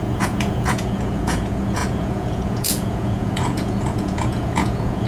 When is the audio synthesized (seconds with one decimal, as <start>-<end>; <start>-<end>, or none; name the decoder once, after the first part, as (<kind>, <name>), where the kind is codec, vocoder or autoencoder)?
0.0-5.1 (vocoder, Vocos)